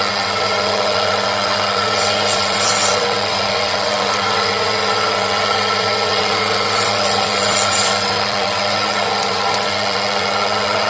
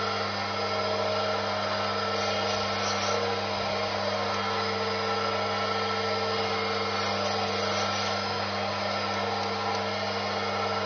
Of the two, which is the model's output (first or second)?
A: first